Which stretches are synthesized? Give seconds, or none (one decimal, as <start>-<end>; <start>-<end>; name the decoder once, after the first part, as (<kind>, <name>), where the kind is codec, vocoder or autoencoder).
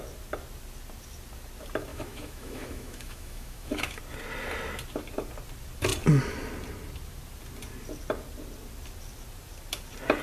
1.9-4.0 (autoencoder, DAC-VAE)